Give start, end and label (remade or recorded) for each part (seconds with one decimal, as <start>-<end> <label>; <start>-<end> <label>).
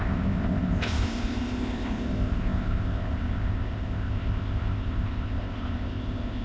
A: 0.0-6.4 remade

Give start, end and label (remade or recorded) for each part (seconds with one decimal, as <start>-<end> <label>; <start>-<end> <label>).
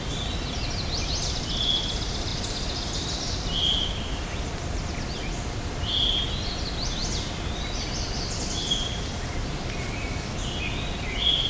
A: 0.0-11.5 recorded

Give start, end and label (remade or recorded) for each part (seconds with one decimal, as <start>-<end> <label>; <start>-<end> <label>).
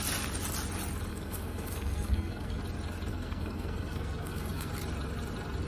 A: 0.0-1.1 recorded; 1.1-2.6 remade; 2.6-3.1 recorded; 3.1-4.7 remade; 4.7-5.7 recorded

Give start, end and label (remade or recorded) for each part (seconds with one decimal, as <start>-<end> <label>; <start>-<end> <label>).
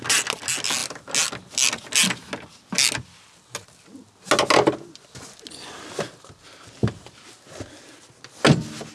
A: 0.0-8.9 recorded